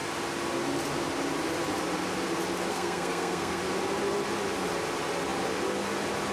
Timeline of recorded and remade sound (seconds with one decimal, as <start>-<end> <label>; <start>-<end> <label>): 0.0-2.7 recorded; 2.7-3.6 remade; 3.6-6.3 recorded